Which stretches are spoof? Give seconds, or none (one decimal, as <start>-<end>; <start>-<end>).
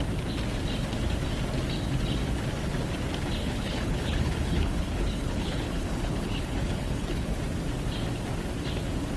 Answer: 3.4-7.4